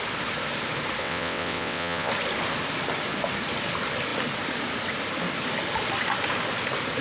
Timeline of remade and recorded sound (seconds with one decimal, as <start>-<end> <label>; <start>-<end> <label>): 0.0-1.0 recorded; 1.0-2.1 remade; 2.1-7.0 recorded